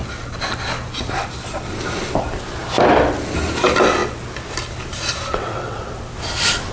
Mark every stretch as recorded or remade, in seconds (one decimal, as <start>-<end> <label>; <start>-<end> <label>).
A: 0.0-5.3 recorded; 5.3-5.8 remade; 5.8-6.7 recorded